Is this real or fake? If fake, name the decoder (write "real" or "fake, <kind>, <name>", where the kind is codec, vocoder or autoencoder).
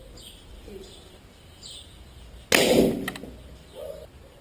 real